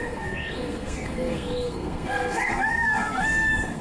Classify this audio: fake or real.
fake